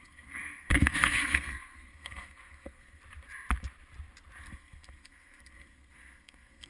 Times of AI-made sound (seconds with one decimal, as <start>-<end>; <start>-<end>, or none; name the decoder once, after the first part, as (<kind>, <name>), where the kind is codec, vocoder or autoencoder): 0.0-3.0 (codec, SNAC); 4.4-6.7